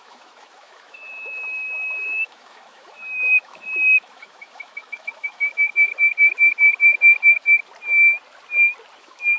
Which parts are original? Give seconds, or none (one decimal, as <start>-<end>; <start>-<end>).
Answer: 5.9-9.0